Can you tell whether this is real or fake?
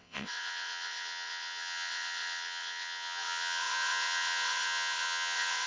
fake